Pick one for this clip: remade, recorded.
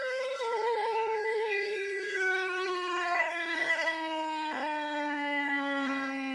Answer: remade